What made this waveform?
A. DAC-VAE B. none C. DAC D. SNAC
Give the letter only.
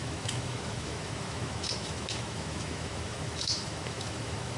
A